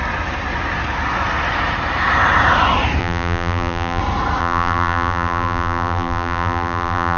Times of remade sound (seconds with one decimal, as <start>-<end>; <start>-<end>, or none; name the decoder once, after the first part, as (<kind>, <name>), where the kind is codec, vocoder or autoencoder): 3.0-4.0 (vocoder, BigVGAN v2); 4.4-7.2